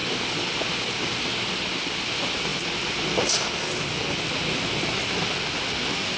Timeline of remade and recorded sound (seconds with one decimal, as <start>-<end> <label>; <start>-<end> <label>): 0.0-6.2 recorded